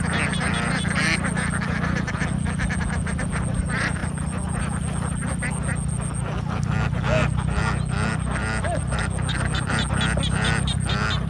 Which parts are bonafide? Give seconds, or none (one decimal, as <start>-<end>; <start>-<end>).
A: 0.0-11.3